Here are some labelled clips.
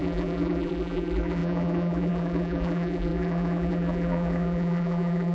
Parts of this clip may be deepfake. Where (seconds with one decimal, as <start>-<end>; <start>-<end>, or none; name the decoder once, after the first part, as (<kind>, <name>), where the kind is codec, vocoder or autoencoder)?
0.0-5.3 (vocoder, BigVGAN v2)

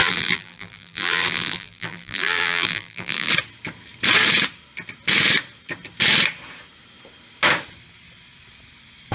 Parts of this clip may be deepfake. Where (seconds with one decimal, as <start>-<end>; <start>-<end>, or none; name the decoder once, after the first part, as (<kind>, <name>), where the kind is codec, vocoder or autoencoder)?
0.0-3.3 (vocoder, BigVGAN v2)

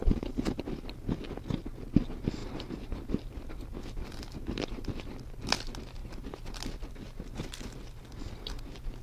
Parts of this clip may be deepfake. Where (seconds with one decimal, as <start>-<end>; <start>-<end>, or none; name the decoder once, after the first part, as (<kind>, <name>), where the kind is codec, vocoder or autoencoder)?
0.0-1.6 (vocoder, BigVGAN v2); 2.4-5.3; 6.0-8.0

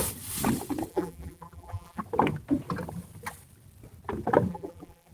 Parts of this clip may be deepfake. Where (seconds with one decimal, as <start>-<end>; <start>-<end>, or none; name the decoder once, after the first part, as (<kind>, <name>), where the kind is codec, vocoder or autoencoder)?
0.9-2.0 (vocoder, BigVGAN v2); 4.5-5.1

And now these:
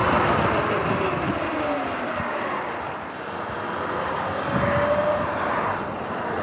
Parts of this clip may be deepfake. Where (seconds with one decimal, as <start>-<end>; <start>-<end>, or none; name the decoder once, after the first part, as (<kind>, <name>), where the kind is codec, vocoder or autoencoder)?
none

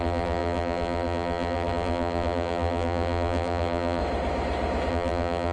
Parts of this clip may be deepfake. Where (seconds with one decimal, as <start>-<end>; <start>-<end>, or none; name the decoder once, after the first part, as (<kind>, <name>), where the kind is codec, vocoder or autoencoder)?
0.0-4.0 (vocoder, BigVGAN v2); 4.9-5.5